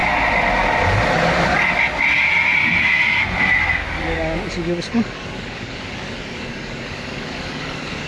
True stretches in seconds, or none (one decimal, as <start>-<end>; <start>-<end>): 0.0-3.8